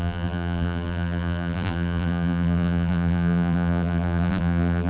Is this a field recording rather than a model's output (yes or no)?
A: no